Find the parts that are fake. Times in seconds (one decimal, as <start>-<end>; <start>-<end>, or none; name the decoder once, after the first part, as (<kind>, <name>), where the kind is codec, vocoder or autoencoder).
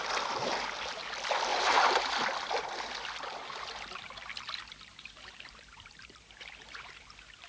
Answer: 1.5-2.1 (vocoder, BigVGAN v2); 4.9-7.5